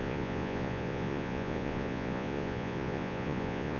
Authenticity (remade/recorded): remade